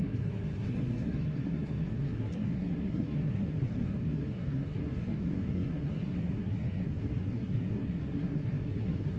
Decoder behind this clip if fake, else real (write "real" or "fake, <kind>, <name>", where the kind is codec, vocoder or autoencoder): fake, codec, SNAC